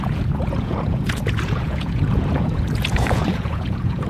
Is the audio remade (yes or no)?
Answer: yes